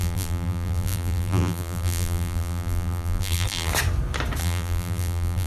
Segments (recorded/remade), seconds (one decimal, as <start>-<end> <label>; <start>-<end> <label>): 0.0-3.7 remade; 3.7-4.4 recorded; 4.4-5.5 remade